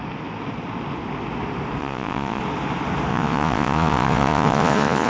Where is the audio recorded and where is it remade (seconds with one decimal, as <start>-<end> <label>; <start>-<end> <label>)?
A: 0.0-1.8 recorded; 1.8-2.4 remade; 2.4-3.1 recorded; 3.1-5.1 remade